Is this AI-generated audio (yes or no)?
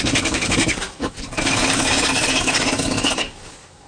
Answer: yes